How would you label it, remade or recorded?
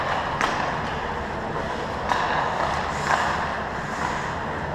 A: recorded